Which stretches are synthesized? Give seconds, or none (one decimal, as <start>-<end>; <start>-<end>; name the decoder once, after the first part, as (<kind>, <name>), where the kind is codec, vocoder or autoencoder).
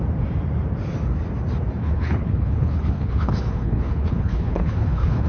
1.8-5.3 (codec, HILCodec)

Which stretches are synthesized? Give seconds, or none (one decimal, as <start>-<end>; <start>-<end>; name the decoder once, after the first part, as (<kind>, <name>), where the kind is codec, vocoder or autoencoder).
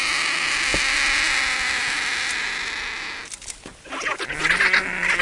none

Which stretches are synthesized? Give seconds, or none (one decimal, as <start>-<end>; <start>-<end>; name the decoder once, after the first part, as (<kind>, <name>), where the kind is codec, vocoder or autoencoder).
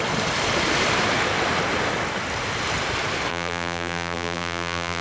3.3-5.0 (vocoder, BigVGAN v2)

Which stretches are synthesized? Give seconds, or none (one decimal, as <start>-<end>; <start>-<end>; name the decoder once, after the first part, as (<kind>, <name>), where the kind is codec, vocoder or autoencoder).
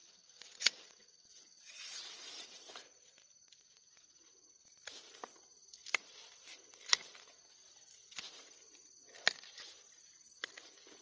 0.0-2.7 (vocoder, WaveNeXt)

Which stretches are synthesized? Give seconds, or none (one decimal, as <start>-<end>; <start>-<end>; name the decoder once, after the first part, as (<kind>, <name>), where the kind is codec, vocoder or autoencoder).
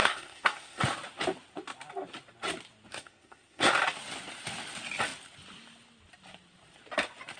0.0-0.8 (codec, SNAC); 2.9-3.7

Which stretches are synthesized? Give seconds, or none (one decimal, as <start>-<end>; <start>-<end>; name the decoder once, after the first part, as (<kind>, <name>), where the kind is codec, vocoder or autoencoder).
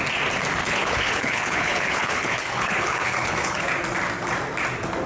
0.6-3.7 (codec, HILCodec)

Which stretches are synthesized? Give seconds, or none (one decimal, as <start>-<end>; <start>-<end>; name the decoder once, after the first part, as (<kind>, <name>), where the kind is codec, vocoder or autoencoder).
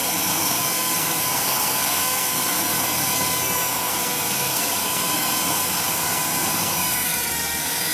0.0-7.9 (codec, SNAC)